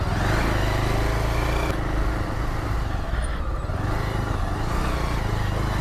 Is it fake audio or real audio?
real